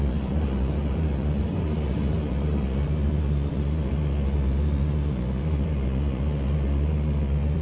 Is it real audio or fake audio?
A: fake